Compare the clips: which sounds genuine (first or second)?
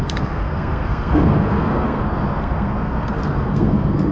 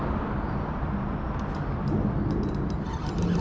second